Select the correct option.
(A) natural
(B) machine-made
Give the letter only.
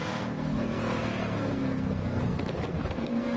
B